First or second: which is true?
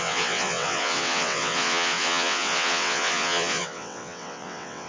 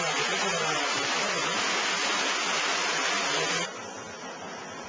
second